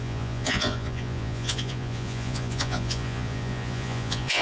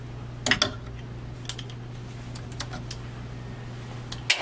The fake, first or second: first